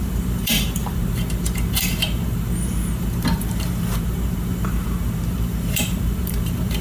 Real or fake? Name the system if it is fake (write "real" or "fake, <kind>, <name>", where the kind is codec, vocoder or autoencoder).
fake, vocoder, BigVGAN v2